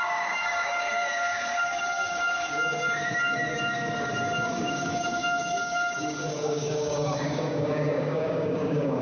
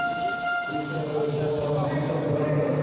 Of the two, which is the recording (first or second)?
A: second